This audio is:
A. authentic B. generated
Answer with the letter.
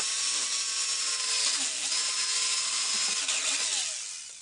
A